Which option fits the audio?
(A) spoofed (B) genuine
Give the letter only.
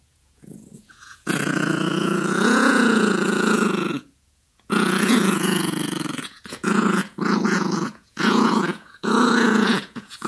A